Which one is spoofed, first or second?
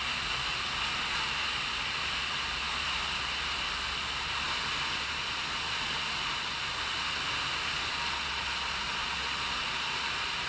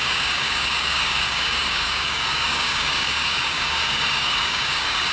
second